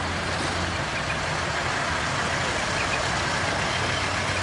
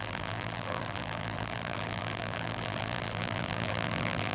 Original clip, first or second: first